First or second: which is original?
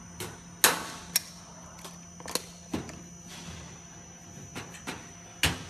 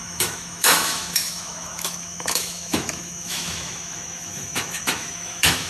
first